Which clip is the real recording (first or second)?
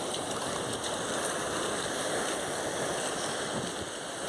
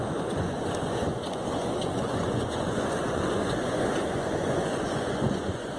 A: first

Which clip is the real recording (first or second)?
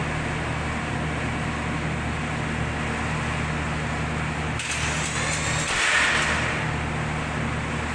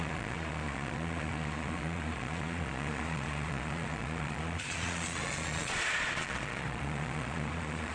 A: first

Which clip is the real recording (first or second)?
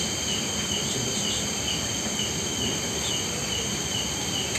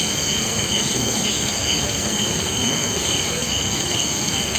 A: first